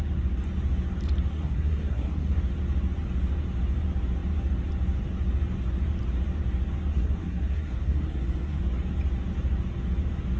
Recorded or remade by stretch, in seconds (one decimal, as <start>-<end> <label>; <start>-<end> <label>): 0.0-1.3 recorded; 1.3-2.4 remade; 2.4-6.9 recorded; 6.9-8.6 remade; 8.6-10.4 recorded